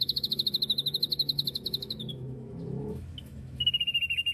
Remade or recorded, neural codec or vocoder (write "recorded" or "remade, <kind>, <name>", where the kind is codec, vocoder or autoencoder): remade, autoencoder, DAC-VAE